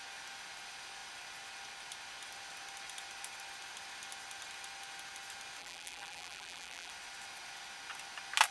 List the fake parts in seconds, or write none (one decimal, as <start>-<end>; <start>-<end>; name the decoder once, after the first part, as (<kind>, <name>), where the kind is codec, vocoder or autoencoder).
5.6-6.9 (vocoder, BigVGAN v2)